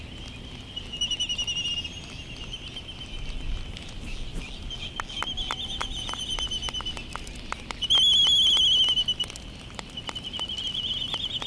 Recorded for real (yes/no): yes